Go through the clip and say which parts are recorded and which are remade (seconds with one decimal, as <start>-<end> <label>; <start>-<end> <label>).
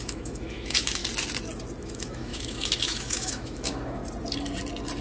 0.0-1.0 remade; 1.0-1.8 recorded; 1.8-4.0 remade; 4.0-5.0 recorded